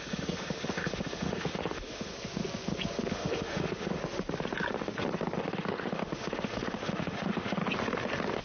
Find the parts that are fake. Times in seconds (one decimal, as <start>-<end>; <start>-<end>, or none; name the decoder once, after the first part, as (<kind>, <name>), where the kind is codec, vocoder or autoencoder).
0.0-2.1 (autoencoder, DAC-VAE); 3.1-4.0; 5.4-7.6